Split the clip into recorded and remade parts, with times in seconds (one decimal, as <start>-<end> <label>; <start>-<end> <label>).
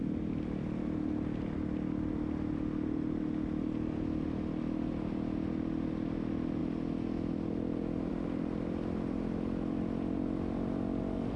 0.0-11.4 recorded